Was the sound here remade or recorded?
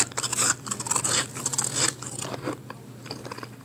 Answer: recorded